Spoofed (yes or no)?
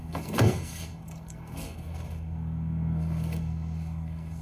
yes